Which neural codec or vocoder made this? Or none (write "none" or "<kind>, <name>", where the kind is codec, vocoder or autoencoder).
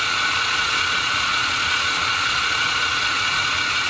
vocoder, Vocos